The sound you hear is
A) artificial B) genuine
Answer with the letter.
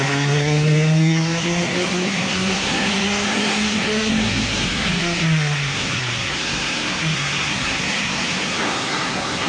A